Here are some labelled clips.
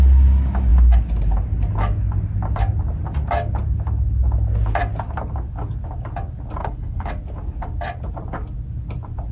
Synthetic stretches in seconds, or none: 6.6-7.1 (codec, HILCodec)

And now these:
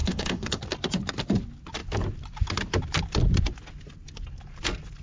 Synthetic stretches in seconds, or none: 0.0-0.6 (codec, HILCodec)